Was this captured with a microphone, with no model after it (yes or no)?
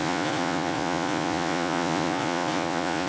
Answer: no